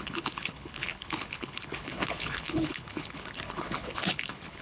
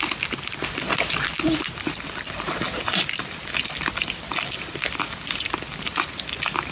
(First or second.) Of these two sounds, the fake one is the first